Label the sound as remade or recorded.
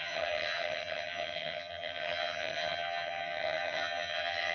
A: remade